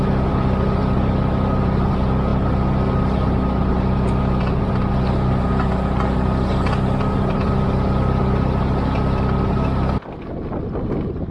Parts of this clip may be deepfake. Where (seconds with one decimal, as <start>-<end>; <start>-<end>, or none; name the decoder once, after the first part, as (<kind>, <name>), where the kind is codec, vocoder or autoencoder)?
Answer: none